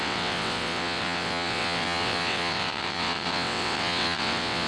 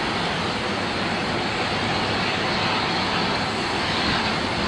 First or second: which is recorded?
second